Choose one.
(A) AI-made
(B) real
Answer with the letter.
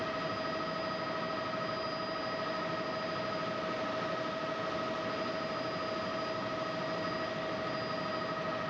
B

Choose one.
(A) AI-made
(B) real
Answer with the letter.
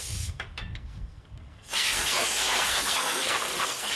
A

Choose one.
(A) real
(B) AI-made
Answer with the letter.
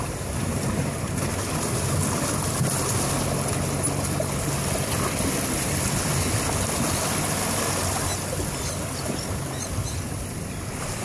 A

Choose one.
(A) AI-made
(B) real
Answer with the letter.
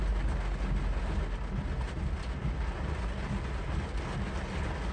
B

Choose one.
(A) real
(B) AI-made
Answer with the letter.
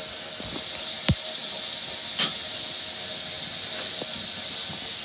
A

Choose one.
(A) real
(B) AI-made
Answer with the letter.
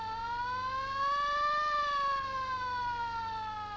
A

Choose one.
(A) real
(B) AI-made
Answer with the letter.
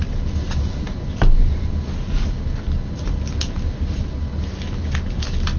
A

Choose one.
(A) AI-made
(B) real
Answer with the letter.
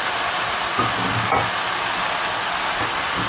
B